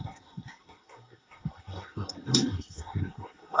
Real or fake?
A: fake